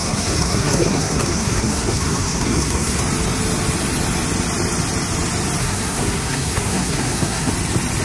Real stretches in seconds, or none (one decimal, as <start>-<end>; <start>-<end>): 3.0-5.6; 7.5-8.0